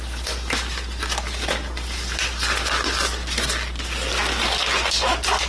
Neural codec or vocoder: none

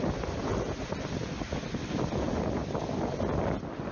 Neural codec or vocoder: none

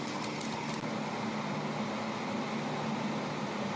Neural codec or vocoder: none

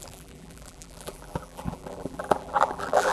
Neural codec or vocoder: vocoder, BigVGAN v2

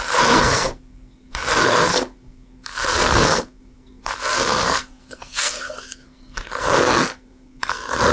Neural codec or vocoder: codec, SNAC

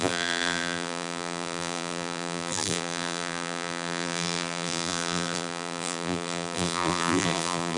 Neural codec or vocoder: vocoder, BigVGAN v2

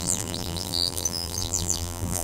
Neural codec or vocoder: vocoder, BigVGAN v2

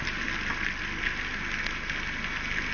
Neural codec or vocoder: none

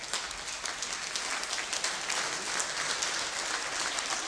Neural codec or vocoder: none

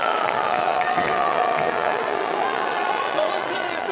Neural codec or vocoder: vocoder, Vocos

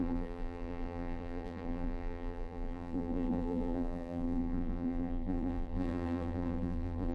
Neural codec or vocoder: vocoder, BigVGAN v2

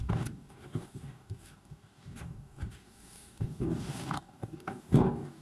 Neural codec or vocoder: codec, DAC